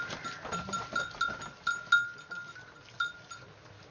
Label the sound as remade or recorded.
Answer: recorded